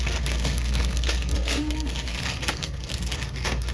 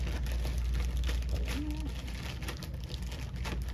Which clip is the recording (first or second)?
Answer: second